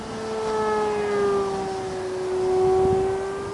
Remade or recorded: recorded